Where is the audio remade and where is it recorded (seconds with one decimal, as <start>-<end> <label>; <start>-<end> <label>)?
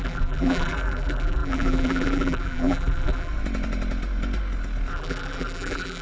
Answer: 0.0-3.3 remade; 3.3-4.9 recorded; 4.9-6.0 remade